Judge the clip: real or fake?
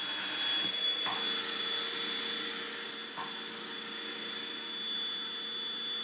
real